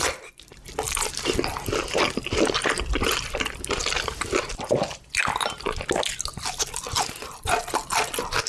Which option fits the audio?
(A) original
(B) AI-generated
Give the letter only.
A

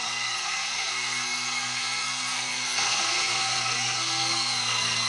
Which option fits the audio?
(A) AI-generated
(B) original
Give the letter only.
A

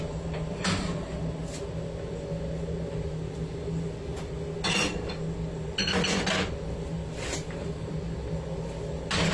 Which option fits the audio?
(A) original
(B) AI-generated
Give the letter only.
A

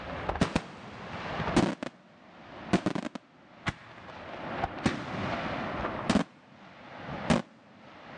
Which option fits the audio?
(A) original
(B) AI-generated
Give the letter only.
A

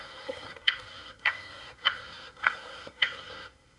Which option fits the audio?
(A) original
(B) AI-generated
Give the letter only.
B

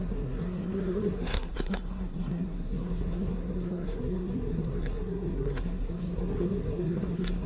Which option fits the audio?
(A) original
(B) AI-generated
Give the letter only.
B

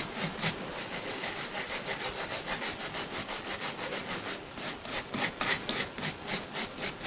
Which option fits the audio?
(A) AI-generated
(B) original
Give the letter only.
B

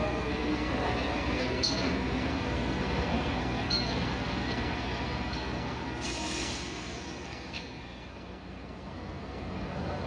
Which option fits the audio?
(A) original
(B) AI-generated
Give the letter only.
B